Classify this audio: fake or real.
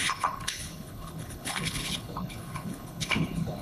fake